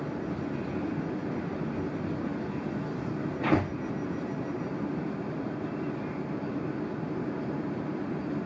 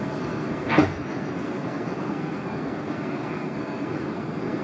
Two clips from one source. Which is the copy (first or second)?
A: second